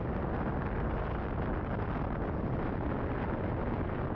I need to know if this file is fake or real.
real